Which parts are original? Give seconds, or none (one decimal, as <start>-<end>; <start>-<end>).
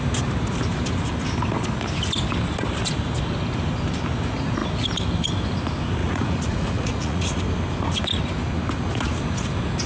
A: 0.0-6.0; 7.4-9.9